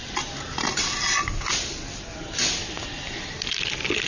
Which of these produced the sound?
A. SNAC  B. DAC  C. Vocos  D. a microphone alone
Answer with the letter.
D